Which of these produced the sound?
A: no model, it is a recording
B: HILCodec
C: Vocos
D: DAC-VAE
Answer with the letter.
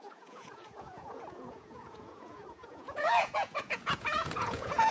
C